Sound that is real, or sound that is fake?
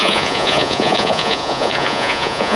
fake